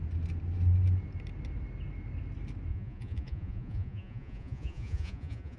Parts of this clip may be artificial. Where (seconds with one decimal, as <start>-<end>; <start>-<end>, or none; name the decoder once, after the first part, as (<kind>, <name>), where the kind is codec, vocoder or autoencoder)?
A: 2.7-5.6 (vocoder, Vocos)